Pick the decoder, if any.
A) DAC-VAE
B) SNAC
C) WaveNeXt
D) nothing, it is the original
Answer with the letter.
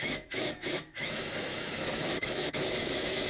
A